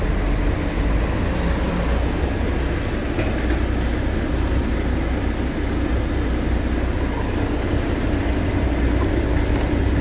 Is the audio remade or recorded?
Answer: recorded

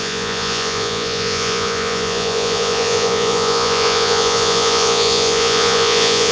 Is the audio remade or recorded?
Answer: remade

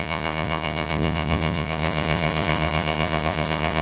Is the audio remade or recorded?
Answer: remade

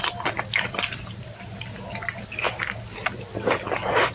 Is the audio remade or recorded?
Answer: recorded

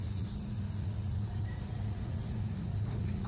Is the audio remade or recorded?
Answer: remade